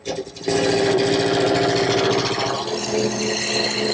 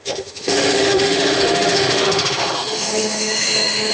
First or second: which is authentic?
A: first